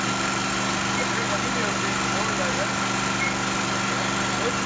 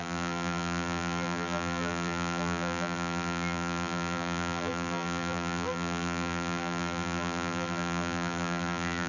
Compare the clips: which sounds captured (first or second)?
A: first